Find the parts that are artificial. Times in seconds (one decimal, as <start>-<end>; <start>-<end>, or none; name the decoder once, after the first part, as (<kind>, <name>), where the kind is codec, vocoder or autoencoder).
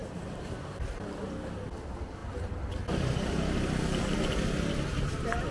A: 0.0-1.2 (vocoder, BigVGAN v2)